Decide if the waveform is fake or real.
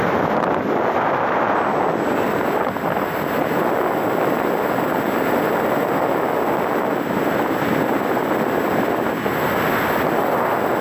real